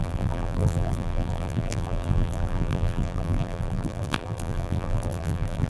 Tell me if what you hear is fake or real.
fake